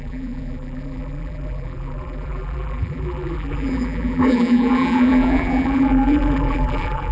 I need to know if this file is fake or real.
fake